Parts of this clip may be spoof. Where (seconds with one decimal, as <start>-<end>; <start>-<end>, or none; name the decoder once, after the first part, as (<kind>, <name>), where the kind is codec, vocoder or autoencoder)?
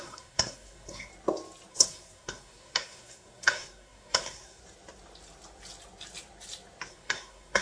0.0-1.1 (codec, SNAC); 1.7-4.6; 6.9-7.6